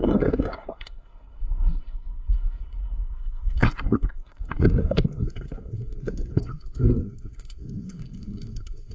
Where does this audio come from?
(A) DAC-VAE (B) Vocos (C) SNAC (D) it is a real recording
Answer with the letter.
C